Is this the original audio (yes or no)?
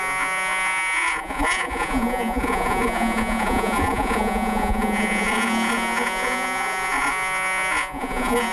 no